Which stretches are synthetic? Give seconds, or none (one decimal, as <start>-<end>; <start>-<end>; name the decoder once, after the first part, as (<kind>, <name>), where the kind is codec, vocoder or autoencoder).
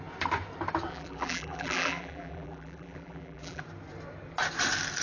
0.9-3.6 (vocoder, BigVGAN v2)